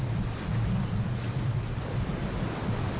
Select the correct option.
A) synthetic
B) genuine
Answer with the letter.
B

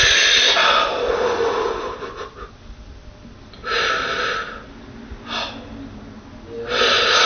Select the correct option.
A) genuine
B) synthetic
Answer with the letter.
A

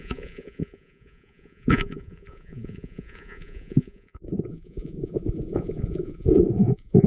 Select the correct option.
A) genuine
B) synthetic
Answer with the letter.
B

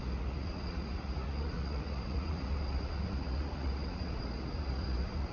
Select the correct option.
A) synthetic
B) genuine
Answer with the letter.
A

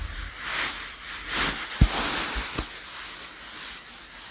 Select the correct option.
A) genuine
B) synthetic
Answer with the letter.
A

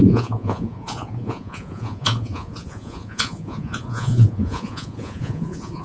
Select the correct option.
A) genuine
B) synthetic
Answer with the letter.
B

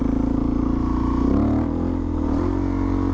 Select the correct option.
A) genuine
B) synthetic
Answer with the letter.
A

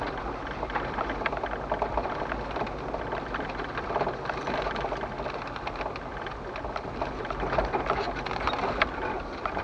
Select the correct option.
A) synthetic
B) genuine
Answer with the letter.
B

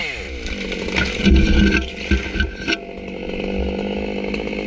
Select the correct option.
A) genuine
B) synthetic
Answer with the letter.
A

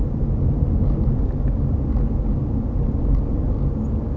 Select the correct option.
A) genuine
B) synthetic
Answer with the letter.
A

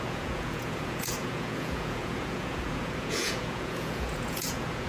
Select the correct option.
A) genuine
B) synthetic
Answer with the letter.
B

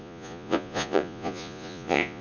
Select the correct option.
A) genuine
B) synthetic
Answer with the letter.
B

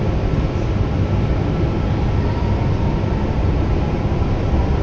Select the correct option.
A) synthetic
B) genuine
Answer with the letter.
B